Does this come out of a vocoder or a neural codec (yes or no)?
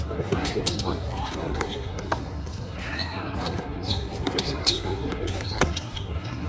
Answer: yes